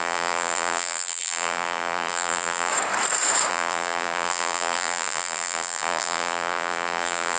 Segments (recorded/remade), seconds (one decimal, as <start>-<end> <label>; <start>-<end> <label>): 0.0-2.7 remade; 2.7-3.5 recorded; 3.5-7.4 remade